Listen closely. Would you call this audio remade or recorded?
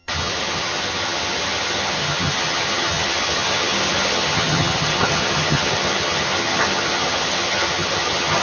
remade